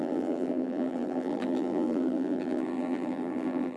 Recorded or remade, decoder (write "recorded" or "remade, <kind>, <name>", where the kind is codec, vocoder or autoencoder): remade, vocoder, BigVGAN v2